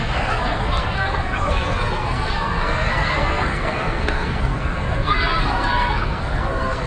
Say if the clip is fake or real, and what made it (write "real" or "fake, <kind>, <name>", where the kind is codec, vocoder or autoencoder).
fake, codec, SNAC